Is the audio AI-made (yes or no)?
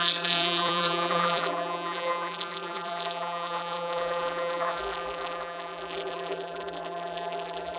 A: yes